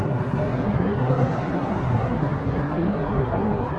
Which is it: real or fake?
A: fake